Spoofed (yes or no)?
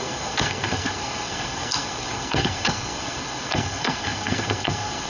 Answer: yes